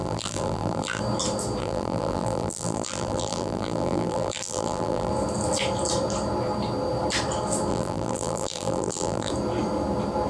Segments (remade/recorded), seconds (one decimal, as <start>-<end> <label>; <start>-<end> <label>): 0.0-1.0 remade; 1.0-1.6 recorded; 1.6-5.1 remade; 5.1-7.7 recorded; 7.7-9.3 remade; 9.3-10.3 recorded